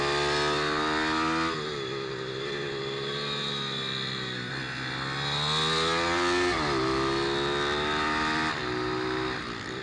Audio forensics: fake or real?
real